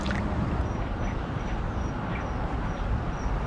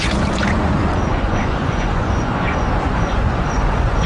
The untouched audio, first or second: first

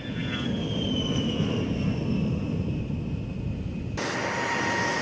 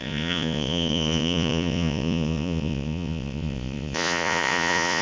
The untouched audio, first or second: first